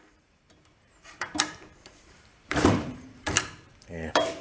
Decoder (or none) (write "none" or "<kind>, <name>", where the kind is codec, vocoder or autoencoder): vocoder, BigVGAN v2